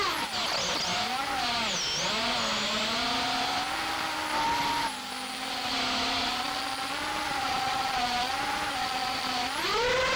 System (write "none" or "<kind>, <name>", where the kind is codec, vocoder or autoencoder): none